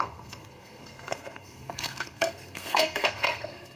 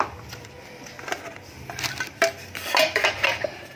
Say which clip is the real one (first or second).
second